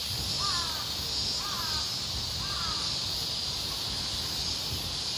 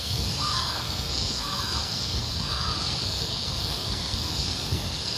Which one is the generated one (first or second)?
second